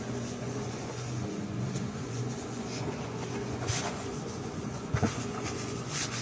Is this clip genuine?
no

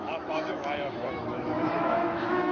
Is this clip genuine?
no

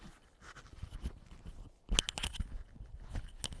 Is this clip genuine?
yes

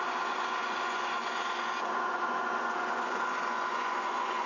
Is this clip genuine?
no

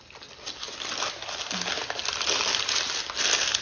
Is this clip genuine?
yes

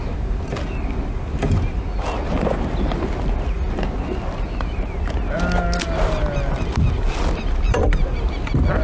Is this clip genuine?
yes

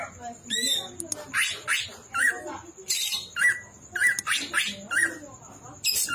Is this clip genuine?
yes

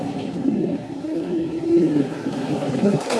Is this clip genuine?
no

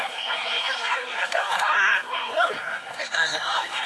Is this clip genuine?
no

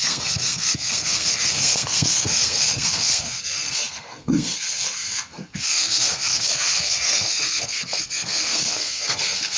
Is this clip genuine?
no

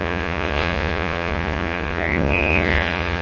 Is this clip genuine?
no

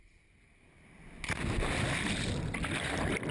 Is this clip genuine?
yes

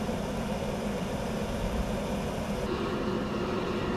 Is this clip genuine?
yes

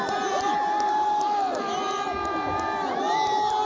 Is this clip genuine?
yes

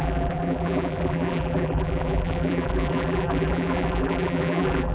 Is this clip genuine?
no